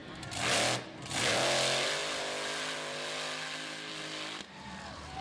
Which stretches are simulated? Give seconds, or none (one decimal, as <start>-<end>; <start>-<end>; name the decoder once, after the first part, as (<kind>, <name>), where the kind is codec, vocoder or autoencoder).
none